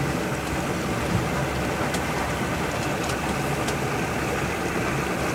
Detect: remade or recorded recorded